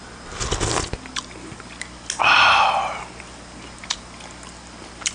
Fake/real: real